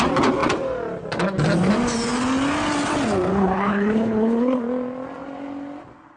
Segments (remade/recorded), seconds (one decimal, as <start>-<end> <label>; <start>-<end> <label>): 0.0-3.3 recorded; 3.3-4.6 remade; 4.6-6.2 recorded